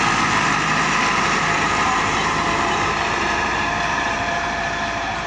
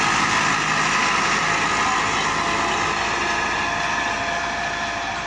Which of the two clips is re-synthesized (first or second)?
first